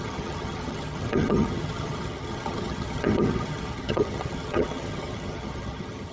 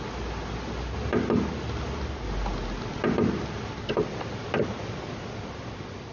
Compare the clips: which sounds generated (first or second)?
first